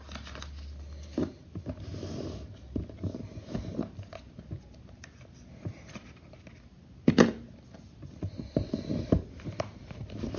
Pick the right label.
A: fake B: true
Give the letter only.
B